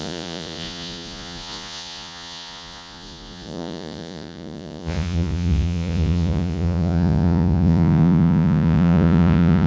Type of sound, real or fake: fake